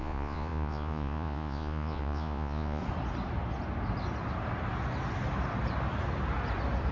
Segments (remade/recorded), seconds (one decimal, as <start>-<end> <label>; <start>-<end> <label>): 0.0-2.8 remade; 2.8-6.9 recorded